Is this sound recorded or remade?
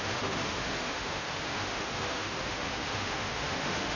remade